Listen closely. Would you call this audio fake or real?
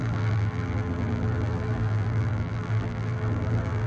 fake